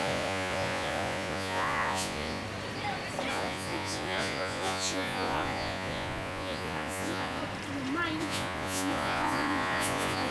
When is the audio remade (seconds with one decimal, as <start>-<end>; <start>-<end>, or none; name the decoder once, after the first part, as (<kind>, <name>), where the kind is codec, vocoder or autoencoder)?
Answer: 0.0-2.4 (vocoder, Vocos); 3.3-7.4; 8.2-10.3